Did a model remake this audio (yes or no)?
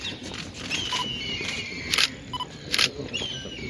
no